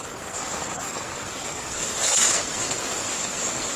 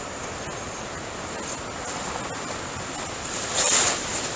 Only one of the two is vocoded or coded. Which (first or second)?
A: first